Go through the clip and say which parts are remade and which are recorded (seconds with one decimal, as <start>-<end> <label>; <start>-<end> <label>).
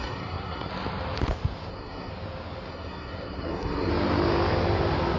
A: 0.0-0.7 remade; 0.7-1.7 recorded; 1.7-2.1 remade; 2.1-2.7 recorded; 2.7-3.9 remade; 3.9-5.2 recorded